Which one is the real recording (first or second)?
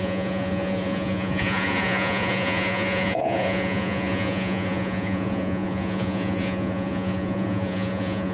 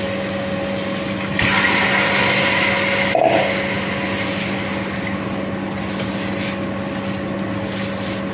second